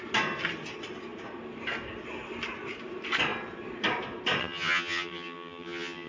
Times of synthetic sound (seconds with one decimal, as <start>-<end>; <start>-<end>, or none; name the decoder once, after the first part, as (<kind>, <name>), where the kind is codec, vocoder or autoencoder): 4.4-6.1 (vocoder, HiFi-GAN)